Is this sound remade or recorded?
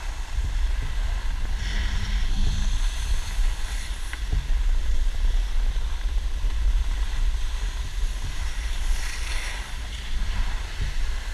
recorded